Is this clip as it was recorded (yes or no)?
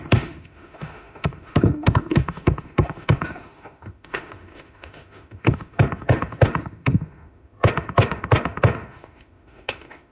no